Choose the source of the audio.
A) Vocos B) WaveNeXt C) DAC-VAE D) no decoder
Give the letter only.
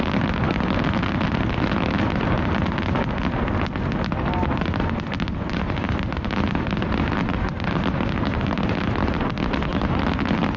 D